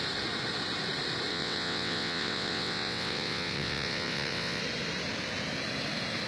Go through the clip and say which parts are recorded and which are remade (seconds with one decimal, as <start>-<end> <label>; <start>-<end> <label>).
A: 0.0-1.3 recorded; 1.3-4.6 remade; 4.6-6.3 recorded